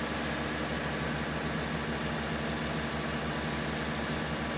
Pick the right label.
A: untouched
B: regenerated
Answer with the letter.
A